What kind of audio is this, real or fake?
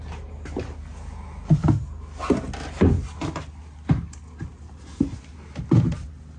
real